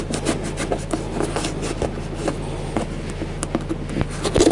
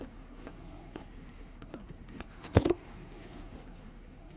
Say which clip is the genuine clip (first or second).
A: first